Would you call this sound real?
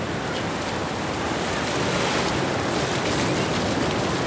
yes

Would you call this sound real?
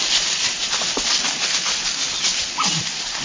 yes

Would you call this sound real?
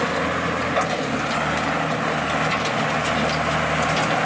yes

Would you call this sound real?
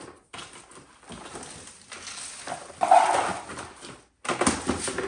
yes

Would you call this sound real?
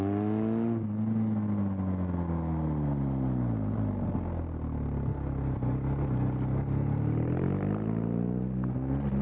yes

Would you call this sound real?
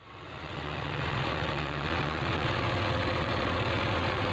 no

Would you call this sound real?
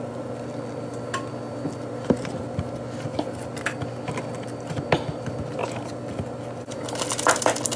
yes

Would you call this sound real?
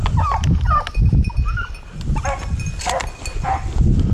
yes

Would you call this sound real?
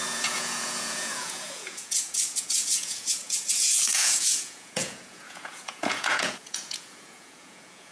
no